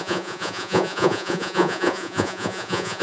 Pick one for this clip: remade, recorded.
remade